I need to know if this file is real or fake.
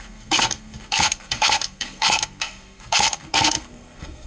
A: fake